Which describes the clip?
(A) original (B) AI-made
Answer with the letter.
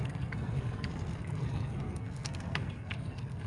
B